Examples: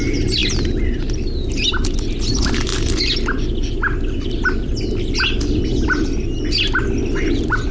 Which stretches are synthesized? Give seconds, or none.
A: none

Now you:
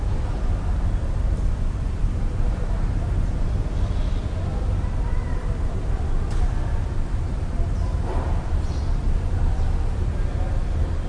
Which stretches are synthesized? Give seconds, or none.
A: 2.0-4.2 (vocoder, BigVGAN v2); 5.3-10.1

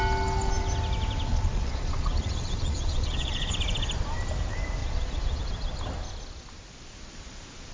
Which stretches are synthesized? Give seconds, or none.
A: 1.3-3.5 (vocoder, Vocos); 4.8-5.4

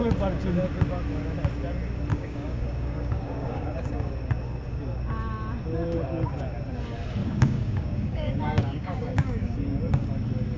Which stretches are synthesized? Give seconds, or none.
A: 2.1-4.1 (codec, DAC); 7.2-10.1

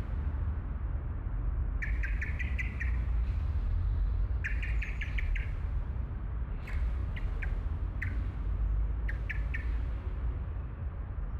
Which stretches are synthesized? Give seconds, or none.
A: 2.0-6.3 (vocoder, BigVGAN v2)

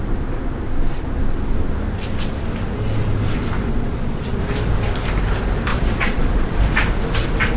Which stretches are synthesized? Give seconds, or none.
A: 3.7-4.4 (vocoder, Vocos); 5.7-6.6

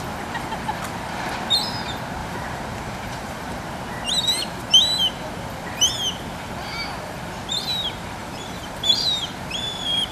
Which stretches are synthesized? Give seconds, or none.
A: 2.2-3.7 (vocoder, BigVGAN v2); 8.2-9.3